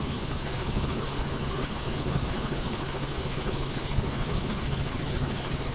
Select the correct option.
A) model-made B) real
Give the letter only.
A